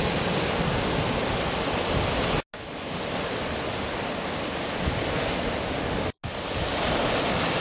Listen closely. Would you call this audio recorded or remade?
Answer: recorded